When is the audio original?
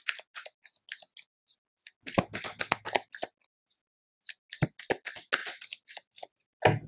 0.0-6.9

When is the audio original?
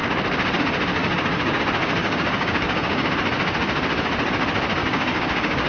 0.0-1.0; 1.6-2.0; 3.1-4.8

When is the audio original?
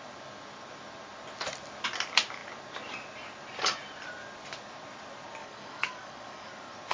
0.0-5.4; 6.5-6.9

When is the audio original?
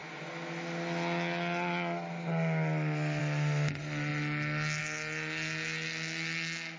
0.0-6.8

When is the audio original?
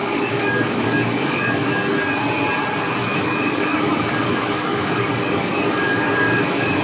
1.7-3.0